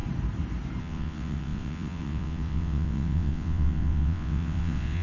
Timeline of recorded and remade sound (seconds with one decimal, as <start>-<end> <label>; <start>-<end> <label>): 0.0-0.8 recorded; 0.8-5.0 remade